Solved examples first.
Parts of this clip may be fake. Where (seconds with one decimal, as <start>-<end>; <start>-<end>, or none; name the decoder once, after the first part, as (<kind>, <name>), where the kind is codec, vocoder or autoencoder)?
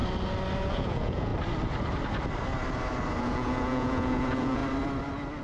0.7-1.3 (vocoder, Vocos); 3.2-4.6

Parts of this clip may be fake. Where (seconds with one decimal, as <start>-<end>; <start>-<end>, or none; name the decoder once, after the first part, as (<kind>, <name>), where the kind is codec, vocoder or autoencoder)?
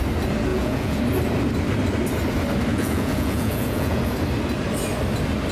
0.5-1.0 (vocoder, Vocos); 2.7-4.0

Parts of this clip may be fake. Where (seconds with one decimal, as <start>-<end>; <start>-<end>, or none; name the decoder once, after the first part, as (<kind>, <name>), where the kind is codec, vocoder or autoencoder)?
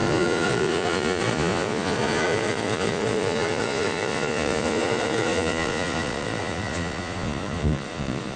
0.0-8.4 (vocoder, Vocos)